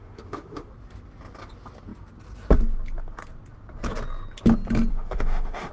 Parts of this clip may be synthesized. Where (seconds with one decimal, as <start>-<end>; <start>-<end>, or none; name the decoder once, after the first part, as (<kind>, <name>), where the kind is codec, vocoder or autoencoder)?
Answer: 0.0-0.7 (autoencoder, DAC-VAE); 4.9-5.7